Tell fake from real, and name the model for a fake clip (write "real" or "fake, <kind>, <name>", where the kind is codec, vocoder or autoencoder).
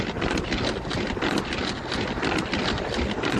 real